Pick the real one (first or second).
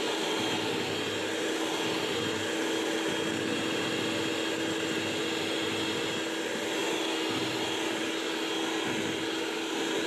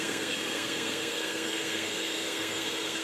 first